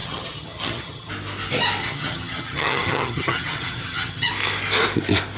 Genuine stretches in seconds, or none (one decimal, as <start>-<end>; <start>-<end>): 1.1-1.8; 4.3-5.4